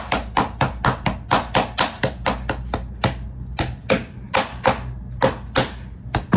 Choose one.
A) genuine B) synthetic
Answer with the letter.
A